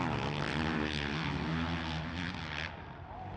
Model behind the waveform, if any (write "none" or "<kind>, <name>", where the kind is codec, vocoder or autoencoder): none